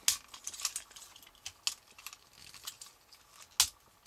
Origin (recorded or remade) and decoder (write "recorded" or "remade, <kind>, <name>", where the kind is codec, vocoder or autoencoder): recorded